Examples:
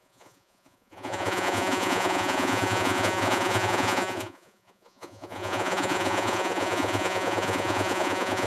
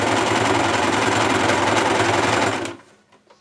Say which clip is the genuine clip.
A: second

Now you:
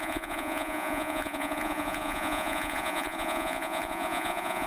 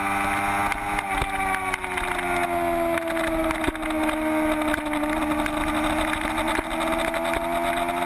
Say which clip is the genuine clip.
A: second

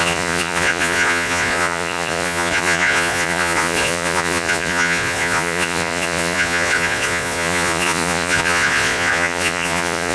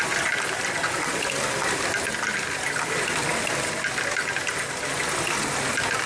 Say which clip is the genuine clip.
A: second